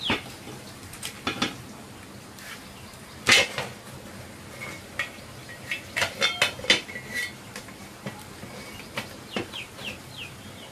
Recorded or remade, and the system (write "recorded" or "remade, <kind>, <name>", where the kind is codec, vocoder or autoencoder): recorded